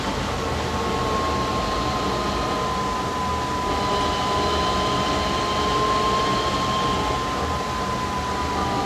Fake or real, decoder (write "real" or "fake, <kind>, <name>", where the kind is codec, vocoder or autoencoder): real